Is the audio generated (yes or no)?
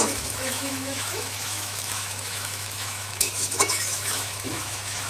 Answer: yes